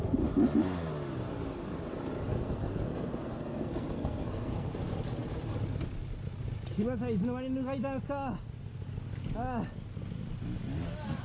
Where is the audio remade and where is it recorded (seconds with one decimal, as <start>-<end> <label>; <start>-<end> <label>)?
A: 0.0-2.3 recorded; 2.3-4.8 remade; 4.8-11.2 recorded